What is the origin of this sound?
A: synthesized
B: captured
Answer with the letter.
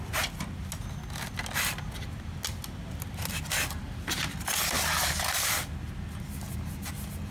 B